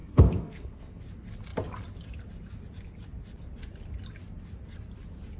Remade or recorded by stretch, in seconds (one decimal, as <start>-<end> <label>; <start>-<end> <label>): 0.0-1.0 remade; 1.0-5.4 recorded